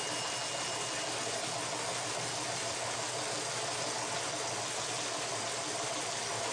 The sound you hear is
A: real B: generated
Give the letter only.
A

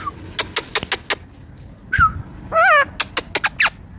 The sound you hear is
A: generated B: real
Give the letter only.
B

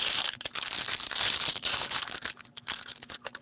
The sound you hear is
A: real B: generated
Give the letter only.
A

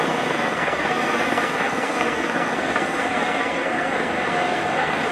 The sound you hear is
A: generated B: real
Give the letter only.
A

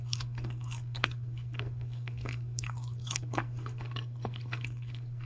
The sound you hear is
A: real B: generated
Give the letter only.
B